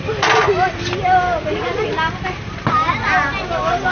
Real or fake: real